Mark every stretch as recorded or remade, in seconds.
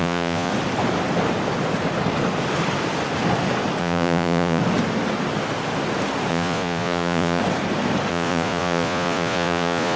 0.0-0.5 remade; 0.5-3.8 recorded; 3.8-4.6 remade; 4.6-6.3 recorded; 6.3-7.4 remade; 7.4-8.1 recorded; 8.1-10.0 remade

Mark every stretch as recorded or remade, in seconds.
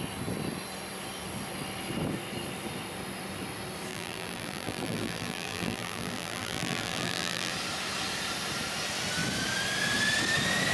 0.0-3.9 recorded; 3.9-7.5 remade; 7.5-10.7 recorded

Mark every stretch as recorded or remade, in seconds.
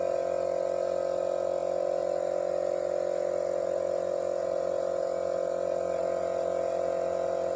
0.0-7.6 recorded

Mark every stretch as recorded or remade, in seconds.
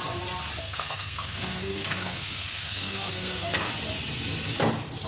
0.0-0.6 recorded; 0.6-3.7 remade; 3.7-5.1 recorded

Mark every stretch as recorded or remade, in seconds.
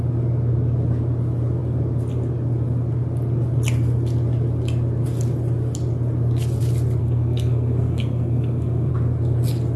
0.0-7.0 recorded; 7.0-8.9 remade; 8.9-9.8 recorded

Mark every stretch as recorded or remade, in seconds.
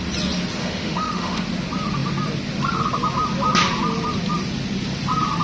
0.0-0.6 recorded; 0.6-1.4 remade; 1.4-5.4 recorded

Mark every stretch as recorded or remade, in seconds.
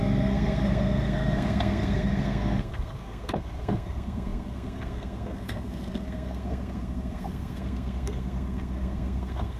0.0-9.6 remade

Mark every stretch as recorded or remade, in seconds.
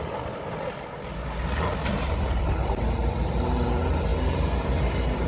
0.0-5.3 recorded